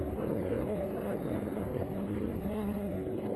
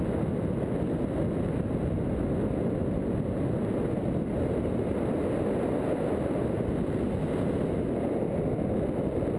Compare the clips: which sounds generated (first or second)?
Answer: first